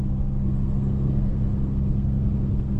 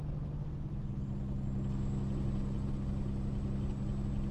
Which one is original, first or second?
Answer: second